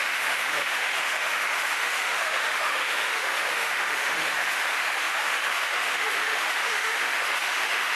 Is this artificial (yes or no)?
yes